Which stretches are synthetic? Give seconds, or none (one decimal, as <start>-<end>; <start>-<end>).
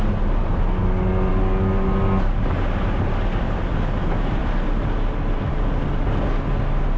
none